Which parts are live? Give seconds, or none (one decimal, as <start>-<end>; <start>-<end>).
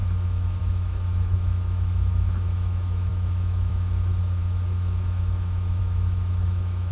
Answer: none